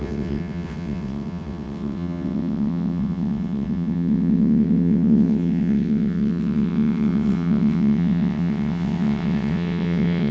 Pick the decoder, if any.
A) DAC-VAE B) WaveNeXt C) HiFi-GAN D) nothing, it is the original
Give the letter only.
B